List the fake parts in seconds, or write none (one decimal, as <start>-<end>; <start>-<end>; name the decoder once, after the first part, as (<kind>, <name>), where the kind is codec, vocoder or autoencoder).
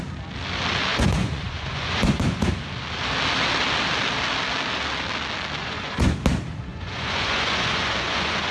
0.9-2.5 (vocoder, Vocos); 5.6-6.2; 6.7-8.5